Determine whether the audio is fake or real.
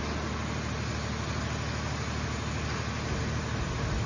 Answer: real